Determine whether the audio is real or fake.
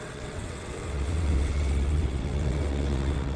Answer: fake